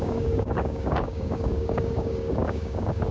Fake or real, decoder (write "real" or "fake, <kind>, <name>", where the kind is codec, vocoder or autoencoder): fake, codec, DAC